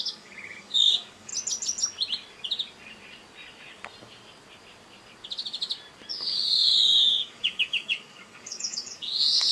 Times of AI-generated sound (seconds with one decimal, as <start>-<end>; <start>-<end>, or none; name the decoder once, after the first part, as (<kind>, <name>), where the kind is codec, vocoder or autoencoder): 0.0-1.3 (codec, DAC); 6.1-9.5

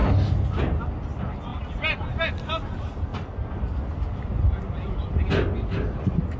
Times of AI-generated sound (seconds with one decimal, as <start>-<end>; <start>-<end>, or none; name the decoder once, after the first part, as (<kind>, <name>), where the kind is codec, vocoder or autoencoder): none

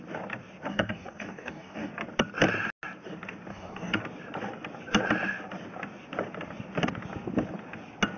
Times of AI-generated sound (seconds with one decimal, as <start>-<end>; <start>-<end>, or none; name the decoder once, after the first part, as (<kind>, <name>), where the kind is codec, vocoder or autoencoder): 0.7-1.9 (codec, DAC); 3.5-4.0

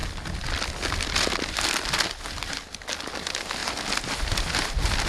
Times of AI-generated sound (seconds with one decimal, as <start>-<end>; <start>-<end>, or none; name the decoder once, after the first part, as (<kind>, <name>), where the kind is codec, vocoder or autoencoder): none

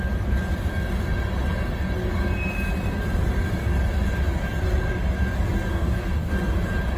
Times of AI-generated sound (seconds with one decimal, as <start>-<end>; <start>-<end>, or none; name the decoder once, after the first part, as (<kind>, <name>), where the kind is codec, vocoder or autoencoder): 5.7-6.3 (codec, DAC)

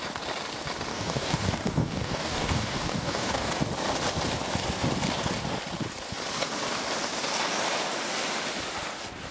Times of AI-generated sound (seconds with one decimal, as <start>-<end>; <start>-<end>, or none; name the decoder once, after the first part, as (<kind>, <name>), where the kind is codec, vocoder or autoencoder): 0.9-3.5 (codec, DAC)

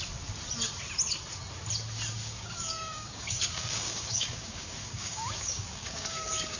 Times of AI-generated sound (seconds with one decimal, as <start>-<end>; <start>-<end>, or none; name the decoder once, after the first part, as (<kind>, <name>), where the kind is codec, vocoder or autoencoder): 2.2-6.6 (codec, DAC)

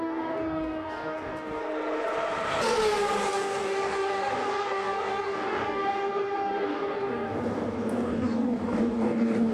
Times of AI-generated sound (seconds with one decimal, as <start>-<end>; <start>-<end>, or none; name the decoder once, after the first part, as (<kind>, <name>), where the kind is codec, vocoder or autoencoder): 0.0-1.6 (codec, DAC); 3.3-9.5